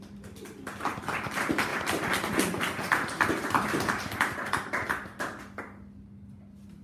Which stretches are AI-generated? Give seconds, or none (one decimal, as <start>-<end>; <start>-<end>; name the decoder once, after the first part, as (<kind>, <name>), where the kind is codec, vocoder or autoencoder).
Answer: none